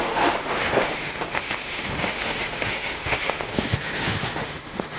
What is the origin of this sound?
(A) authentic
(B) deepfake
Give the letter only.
B